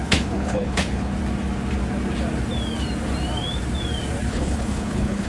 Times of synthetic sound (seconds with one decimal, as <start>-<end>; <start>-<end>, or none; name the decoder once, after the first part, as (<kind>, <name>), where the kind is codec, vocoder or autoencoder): 0.0-1.1 (codec, HILCodec); 4.3-5.3